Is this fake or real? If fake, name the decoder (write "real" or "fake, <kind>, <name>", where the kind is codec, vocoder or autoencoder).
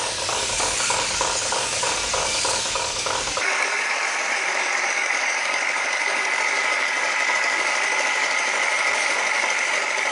fake, codec, DAC